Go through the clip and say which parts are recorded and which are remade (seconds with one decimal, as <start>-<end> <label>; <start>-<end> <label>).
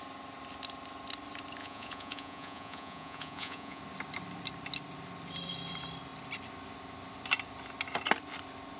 0.0-1.6 recorded; 1.6-3.8 remade; 3.8-8.8 recorded